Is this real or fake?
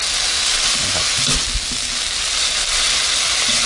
real